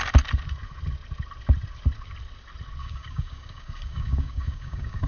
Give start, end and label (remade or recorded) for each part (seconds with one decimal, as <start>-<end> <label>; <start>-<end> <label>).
0.0-2.8 recorded; 2.8-5.1 remade